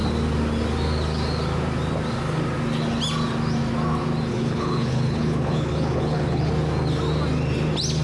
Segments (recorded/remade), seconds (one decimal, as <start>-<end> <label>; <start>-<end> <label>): 0.0-4.3 recorded; 4.3-6.5 remade; 6.5-8.0 recorded